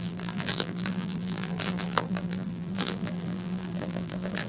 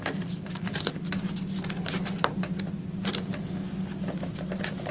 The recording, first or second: second